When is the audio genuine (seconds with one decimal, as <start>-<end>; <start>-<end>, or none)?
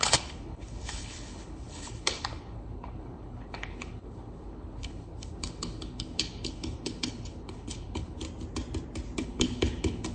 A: 8.2-9.2